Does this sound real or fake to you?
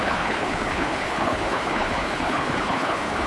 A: fake